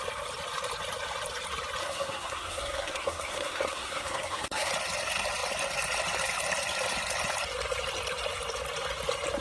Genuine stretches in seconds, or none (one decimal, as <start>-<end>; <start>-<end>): 0.0-1.8; 4.7-9.4